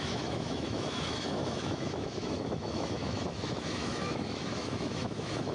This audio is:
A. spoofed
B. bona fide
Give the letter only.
A